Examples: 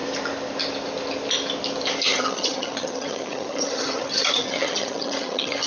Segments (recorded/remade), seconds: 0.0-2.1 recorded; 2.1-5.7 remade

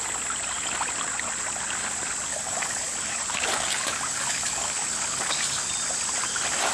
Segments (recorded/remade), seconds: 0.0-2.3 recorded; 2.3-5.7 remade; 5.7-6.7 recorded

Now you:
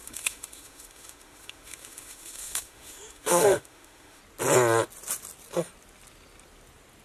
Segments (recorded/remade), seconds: 0.0-4.2 remade; 4.2-7.0 recorded

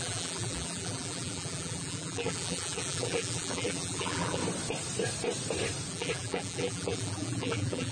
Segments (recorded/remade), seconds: 0.0-4.4 remade; 4.4-5.9 recorded; 5.9-7.9 remade

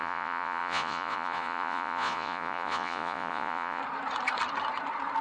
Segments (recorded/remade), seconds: 0.0-3.8 remade; 3.8-5.2 recorded

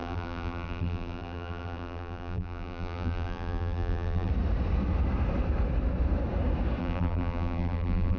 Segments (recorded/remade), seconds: 0.0-4.3 remade; 4.3-6.8 recorded; 6.8-8.2 remade

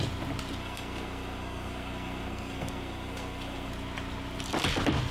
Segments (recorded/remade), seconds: 0.0-0.6 recorded; 0.6-3.7 remade; 3.7-5.1 recorded

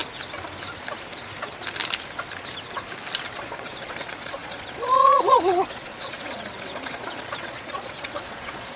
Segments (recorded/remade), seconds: 0.0-3.4 recorded; 3.4-8.8 remade